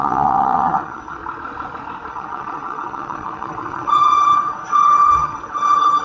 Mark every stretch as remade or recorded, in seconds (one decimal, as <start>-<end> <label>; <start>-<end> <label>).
0.0-1.2 remade; 1.2-2.1 recorded; 2.1-6.0 remade